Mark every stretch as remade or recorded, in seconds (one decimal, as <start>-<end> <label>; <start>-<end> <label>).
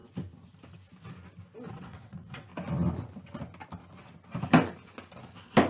0.0-1.7 recorded; 1.7-2.5 remade; 2.5-5.7 recorded